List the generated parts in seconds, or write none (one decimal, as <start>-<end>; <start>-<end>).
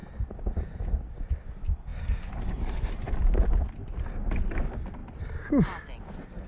5.0-6.0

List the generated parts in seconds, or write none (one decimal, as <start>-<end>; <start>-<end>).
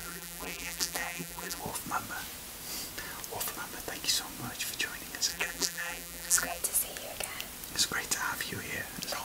0.0-1.6; 5.3-6.6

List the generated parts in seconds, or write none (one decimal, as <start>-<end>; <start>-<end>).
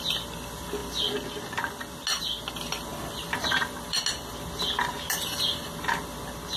2.9-4.0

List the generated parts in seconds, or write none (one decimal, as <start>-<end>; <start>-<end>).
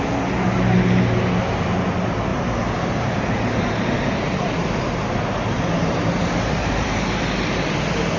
2.3-7.2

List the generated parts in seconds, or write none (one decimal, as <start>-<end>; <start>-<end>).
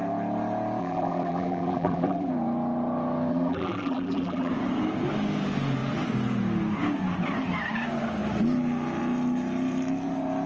0.8-2.3; 3.3-4.5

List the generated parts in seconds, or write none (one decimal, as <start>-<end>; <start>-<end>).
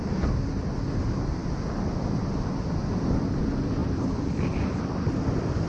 2.8-3.4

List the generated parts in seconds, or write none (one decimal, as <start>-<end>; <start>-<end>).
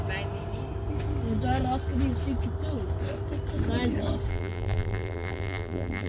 4.3-6.1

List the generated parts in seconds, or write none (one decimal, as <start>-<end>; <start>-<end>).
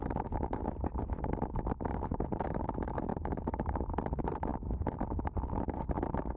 3.1-3.8